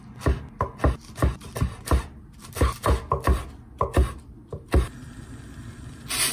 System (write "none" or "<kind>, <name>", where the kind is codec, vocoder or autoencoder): none